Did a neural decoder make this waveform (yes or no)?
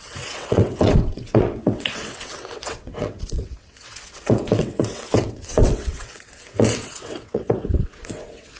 yes